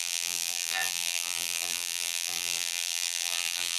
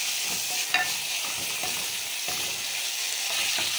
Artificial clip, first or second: first